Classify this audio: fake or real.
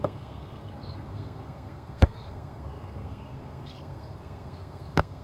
fake